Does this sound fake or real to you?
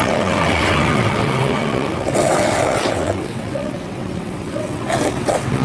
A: fake